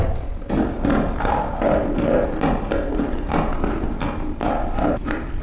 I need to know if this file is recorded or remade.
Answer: recorded